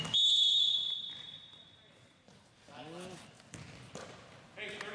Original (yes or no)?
yes